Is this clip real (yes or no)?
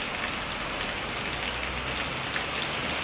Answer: yes